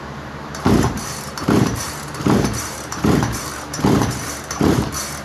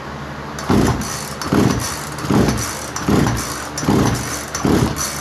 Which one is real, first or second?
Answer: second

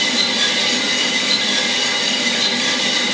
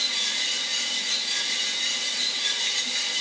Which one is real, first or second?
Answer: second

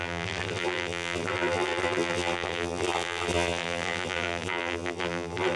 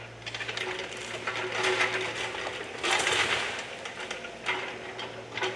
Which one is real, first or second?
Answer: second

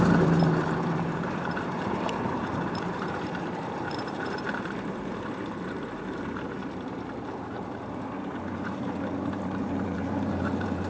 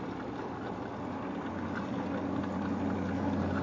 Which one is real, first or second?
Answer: second